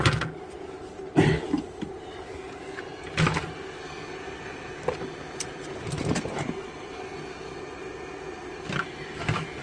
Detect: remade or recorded recorded